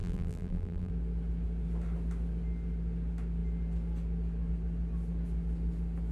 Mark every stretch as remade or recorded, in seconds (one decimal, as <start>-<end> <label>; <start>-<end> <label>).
0.0-0.9 remade; 0.9-6.1 recorded